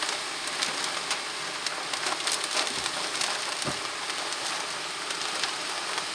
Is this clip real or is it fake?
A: real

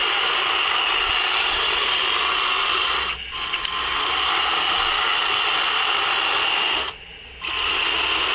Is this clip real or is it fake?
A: real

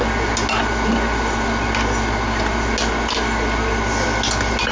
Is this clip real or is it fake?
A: real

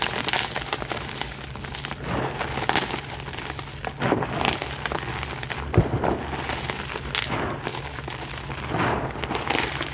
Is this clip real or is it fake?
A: real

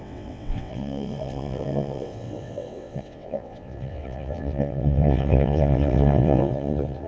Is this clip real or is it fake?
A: fake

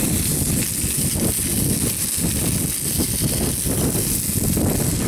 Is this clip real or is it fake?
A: real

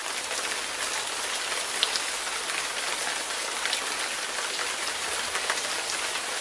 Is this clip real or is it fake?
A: real